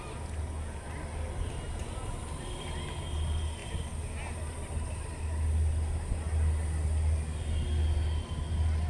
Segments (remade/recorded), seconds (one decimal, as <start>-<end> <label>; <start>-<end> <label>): 0.0-8.9 recorded

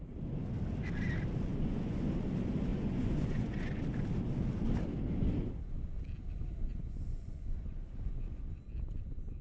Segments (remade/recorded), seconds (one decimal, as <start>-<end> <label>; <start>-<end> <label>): 0.0-1.5 recorded; 1.5-2.1 remade; 2.1-2.7 recorded; 2.7-3.8 remade; 3.8-6.7 recorded; 6.7-8.4 remade; 8.4-9.4 recorded

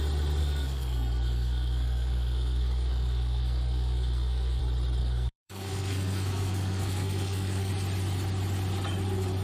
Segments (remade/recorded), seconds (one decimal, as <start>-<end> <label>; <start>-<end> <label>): 0.0-0.4 recorded; 0.4-4.6 remade; 4.6-5.0 recorded; 5.0-7.7 remade; 7.7-9.4 recorded

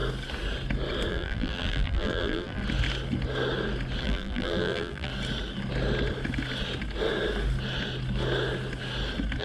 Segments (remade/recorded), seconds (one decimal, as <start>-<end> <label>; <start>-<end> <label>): 0.0-1.1 recorded; 1.1-2.6 remade; 2.6-4.0 recorded; 4.0-5.1 remade; 5.1-9.4 recorded

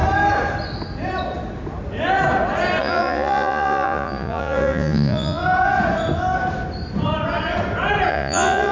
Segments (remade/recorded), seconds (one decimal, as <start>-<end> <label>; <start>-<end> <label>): 0.0-2.8 recorded; 2.8-5.4 remade; 5.4-8.1 recorded; 8.1-8.7 remade